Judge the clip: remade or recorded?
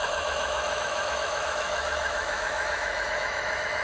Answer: remade